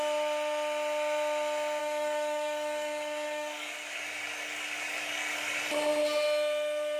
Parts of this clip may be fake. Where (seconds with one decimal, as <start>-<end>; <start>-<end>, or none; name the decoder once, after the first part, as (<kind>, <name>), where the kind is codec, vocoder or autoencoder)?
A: 1.8-5.6 (codec, DAC)